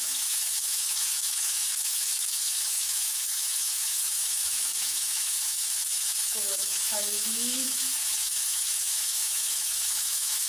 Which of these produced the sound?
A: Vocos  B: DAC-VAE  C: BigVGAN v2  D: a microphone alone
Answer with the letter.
B